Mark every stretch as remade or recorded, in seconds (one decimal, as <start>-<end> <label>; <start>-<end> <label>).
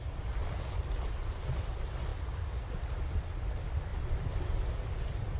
0.0-5.4 recorded